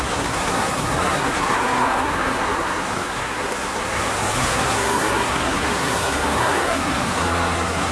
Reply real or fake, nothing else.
fake